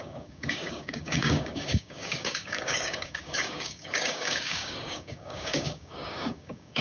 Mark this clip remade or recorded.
remade